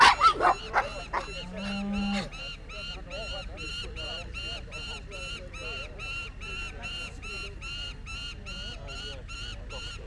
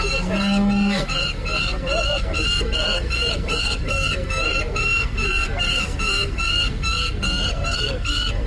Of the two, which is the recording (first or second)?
first